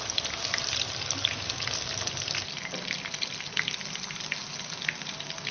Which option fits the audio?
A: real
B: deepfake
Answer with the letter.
A